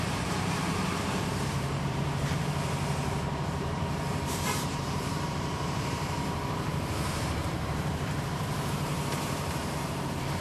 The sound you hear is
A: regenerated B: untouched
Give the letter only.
A